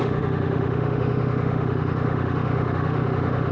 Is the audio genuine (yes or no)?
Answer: no